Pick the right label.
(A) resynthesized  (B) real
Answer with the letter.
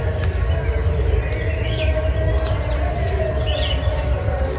B